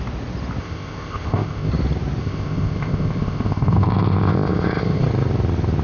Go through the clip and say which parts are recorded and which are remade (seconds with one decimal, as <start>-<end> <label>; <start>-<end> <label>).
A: 0.0-0.6 recorded; 0.6-1.7 remade; 1.7-2.2 recorded; 2.2-5.0 remade; 5.0-5.8 recorded